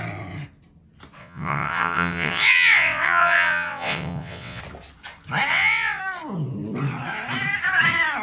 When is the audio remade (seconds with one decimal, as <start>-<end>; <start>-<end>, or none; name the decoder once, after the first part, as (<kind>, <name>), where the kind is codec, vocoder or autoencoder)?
1.2-4.6 (vocoder, WaveNeXt); 5.5-6.0